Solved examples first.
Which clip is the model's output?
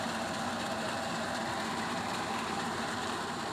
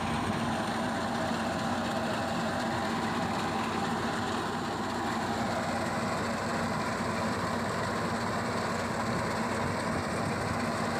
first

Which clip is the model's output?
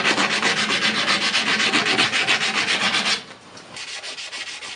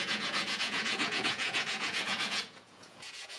second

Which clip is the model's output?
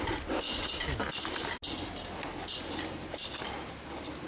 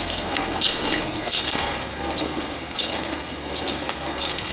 second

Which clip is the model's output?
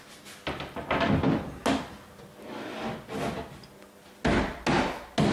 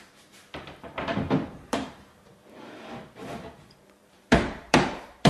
second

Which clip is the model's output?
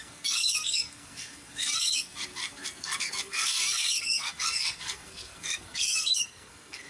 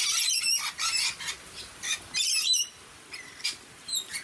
first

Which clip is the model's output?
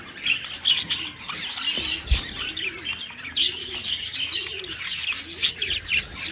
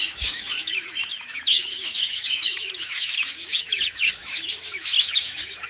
second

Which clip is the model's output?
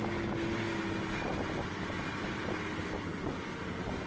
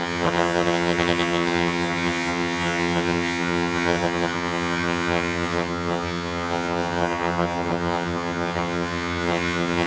second